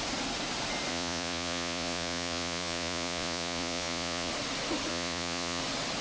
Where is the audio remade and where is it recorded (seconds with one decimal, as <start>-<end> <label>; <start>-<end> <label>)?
0.0-0.9 recorded; 0.9-4.3 remade; 4.3-4.9 recorded; 4.9-5.6 remade; 5.6-6.0 recorded